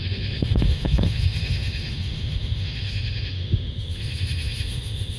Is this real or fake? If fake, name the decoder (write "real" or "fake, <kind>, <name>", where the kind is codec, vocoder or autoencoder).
fake, autoencoder, DAC-VAE